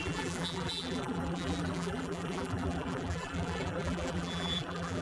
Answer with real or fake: fake